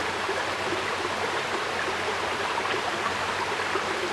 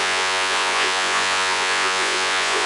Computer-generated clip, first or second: second